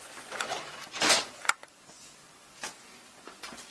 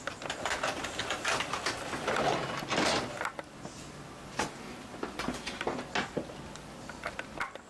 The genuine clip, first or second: second